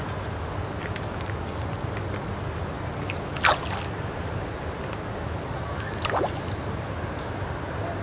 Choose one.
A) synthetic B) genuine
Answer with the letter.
B